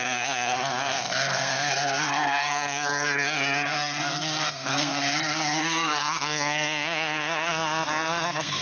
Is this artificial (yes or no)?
yes